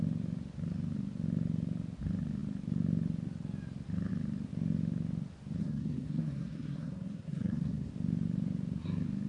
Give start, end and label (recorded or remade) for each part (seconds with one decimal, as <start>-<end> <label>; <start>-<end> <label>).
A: 0.0-5.6 recorded; 5.6-7.9 remade; 7.9-9.3 recorded